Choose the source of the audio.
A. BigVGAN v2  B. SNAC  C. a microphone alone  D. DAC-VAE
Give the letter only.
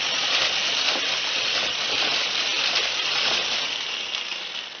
C